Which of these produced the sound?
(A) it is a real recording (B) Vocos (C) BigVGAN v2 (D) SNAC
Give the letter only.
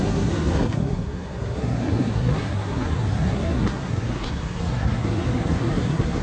D